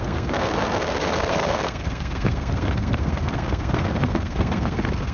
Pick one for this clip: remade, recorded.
remade